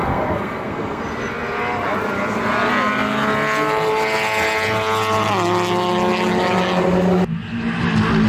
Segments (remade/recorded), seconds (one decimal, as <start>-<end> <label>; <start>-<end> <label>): 0.0-1.0 remade; 1.0-8.3 recorded

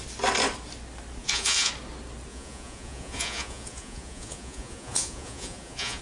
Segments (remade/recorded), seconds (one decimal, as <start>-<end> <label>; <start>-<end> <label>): 0.0-1.2 recorded; 1.2-1.7 remade; 1.7-2.3 recorded; 2.3-6.0 remade

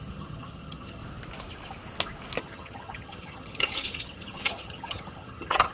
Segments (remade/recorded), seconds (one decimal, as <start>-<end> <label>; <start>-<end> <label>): 0.0-1.0 remade; 1.0-2.4 recorded; 2.4-5.7 remade

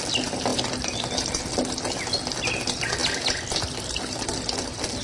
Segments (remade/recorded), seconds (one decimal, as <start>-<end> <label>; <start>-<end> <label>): 0.0-5.0 recorded

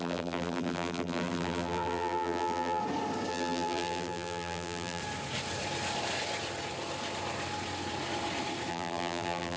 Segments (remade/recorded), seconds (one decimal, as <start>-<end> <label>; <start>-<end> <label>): 0.0-2.8 remade; 2.8-3.3 recorded; 3.3-5.0 remade; 5.0-8.7 recorded; 8.7-9.6 remade

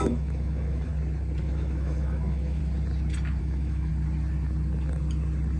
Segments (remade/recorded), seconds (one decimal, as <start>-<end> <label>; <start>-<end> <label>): 0.0-0.9 remade; 0.9-1.4 recorded; 1.4-2.6 remade; 2.6-3.4 recorded; 3.4-3.9 remade; 3.9-5.6 recorded

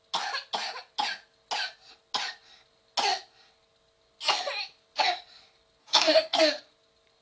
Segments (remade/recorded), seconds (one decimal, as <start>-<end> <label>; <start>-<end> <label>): 0.0-5.8 recorded; 5.8-6.4 remade; 6.4-7.2 recorded

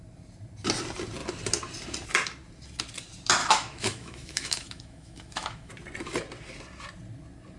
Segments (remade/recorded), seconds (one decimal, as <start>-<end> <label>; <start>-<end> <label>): 0.0-3.4 recorded; 3.4-5.7 remade; 5.7-7.6 recorded